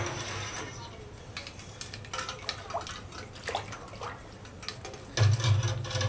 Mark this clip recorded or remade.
recorded